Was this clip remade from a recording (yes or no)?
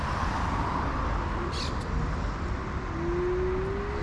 no